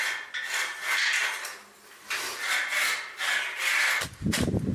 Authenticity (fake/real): real